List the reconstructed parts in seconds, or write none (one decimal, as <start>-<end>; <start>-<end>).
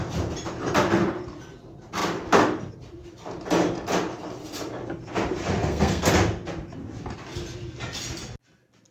5.6-6.1